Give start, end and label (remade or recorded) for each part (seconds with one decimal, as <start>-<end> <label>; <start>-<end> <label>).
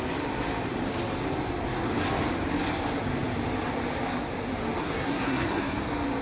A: 0.0-4.8 recorded; 4.8-5.8 remade; 5.8-6.2 recorded